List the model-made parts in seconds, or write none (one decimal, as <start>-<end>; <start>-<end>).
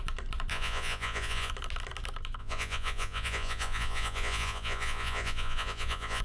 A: 0.5-1.5; 2.4-6.2